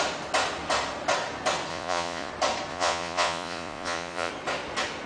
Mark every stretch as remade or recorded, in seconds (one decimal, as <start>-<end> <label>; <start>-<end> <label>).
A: 0.0-1.7 recorded; 1.7-2.3 remade; 2.3-2.7 recorded; 2.7-4.3 remade; 4.3-5.1 recorded